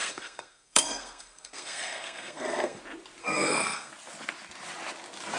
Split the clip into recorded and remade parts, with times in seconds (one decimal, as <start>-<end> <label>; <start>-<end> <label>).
0.0-2.8 remade; 2.8-3.2 recorded; 3.2-3.9 remade; 3.9-5.4 recorded